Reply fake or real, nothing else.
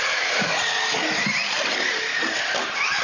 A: real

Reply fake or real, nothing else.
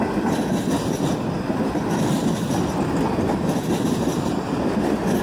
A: real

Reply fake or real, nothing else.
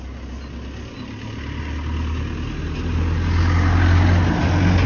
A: real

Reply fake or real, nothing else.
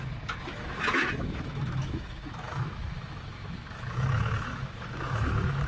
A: fake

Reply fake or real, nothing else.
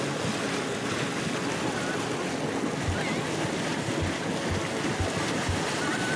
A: real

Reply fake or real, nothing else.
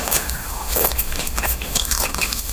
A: fake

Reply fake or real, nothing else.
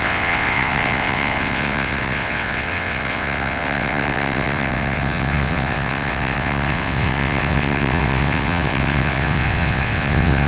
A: fake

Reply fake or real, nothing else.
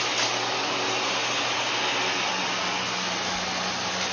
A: real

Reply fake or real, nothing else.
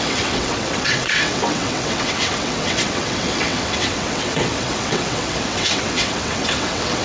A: fake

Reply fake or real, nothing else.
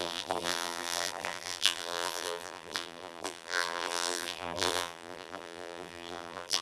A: fake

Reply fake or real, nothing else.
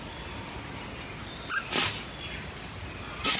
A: real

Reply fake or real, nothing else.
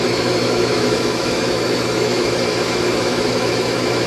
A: fake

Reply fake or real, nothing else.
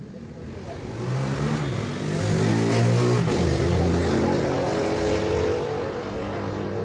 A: real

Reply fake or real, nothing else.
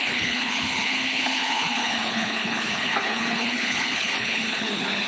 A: fake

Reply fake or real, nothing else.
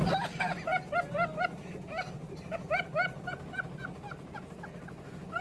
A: real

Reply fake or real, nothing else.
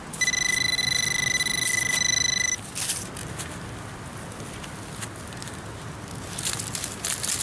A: real